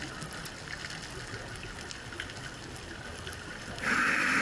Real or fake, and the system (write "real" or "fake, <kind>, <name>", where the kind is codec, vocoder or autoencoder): real